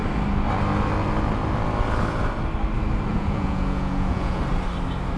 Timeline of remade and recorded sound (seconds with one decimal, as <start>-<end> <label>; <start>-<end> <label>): 0.0-3.1 recorded; 3.1-4.4 remade; 4.4-5.2 recorded